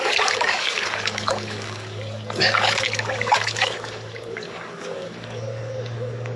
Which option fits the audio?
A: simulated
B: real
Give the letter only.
A